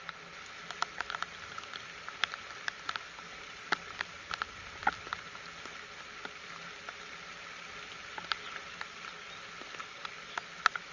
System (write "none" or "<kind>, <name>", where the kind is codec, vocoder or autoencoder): none